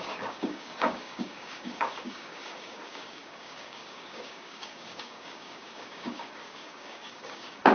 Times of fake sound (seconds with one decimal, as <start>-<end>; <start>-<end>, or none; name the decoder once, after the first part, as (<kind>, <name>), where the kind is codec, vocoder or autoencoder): 0.0-7.7 (codec, DAC)